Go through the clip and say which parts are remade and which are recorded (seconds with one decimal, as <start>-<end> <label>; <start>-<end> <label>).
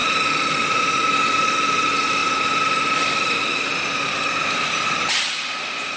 0.0-6.0 recorded